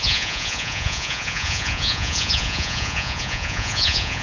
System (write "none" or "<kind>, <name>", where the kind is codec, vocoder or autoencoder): vocoder, Vocos